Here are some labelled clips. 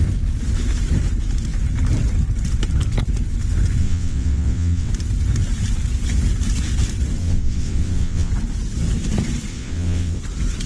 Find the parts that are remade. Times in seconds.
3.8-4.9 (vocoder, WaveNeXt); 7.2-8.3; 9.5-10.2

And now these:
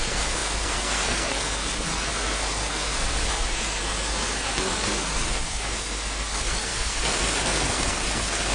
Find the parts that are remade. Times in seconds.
0.0-8.5 (codec, SNAC)

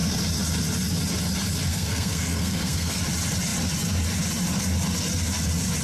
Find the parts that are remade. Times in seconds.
1.7-3.0 (codec, SNAC)

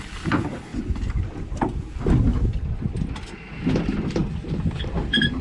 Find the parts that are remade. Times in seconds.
4.2-5.0 (vocoder, BigVGAN v2)

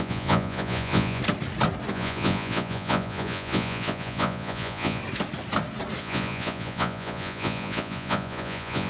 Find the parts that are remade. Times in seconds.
0.0-1.2 (vocoder, Vocos); 1.9-5.0; 6.0-8.9

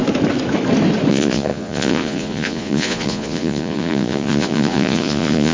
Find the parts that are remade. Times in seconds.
1.1-5.5 (vocoder, Vocos)